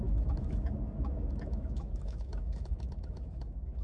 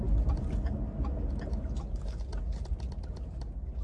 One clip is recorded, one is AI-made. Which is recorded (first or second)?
second